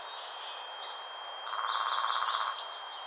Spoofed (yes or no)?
no